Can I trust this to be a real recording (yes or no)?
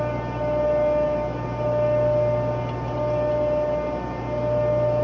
yes